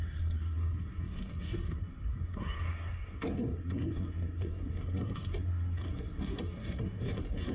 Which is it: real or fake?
fake